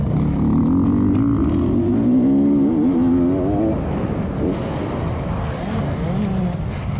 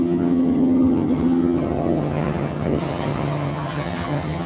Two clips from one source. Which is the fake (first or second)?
second